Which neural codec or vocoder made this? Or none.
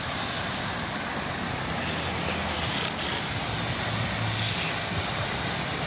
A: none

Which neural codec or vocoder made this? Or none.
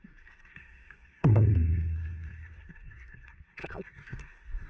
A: codec, SNAC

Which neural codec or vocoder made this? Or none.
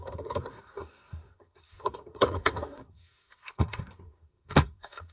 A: codec, SNAC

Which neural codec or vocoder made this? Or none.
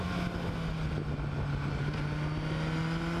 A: none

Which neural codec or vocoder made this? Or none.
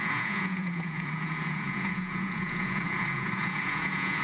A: vocoder, Vocos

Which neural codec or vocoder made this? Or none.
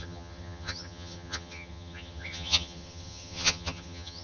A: vocoder, HiFi-GAN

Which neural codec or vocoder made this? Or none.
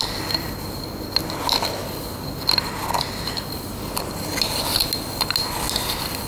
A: none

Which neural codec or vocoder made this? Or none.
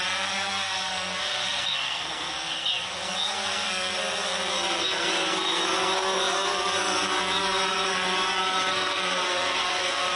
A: codec, SNAC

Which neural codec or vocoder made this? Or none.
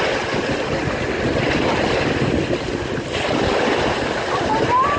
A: none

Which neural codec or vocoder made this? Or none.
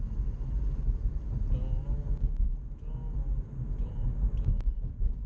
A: none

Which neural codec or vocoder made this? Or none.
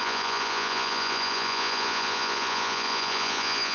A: vocoder, Vocos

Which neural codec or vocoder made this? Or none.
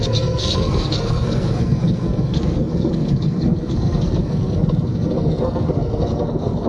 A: codec, SNAC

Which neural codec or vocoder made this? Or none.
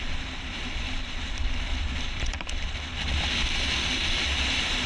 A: none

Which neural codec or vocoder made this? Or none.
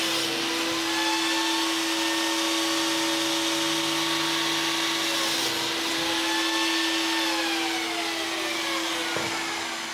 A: none